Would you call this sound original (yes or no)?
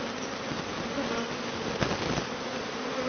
yes